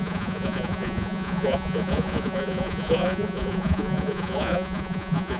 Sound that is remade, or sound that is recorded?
remade